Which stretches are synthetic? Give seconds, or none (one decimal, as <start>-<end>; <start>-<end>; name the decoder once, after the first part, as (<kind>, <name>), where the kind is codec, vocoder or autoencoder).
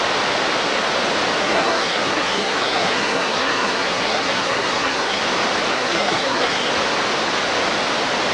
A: 1.4-5.2 (codec, SNAC); 5.7-6.7